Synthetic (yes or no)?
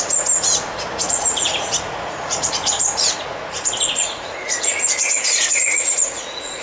yes